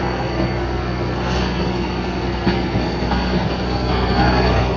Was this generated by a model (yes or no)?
yes